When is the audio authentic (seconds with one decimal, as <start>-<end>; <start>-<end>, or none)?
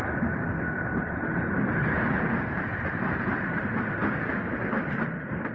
0.0-1.0; 4.3-5.5